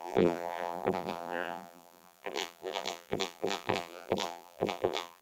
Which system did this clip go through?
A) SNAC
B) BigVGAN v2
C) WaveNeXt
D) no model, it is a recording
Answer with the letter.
B